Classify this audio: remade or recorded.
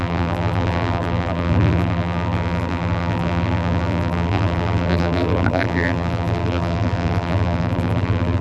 remade